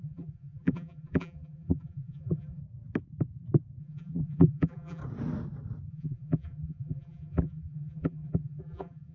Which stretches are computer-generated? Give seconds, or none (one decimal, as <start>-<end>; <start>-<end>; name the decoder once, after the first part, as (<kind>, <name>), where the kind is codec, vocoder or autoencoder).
0.0-2.6 (vocoder, BigVGAN v2); 3.8-5.0; 5.9-9.1